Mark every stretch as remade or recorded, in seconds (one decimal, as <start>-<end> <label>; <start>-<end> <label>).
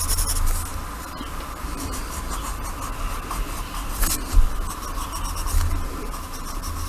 0.0-6.9 recorded